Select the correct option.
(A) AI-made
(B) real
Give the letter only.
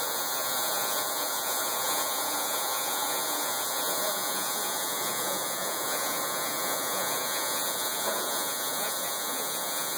A